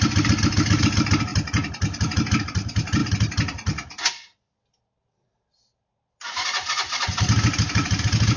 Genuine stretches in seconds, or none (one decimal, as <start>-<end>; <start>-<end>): 0.0-8.4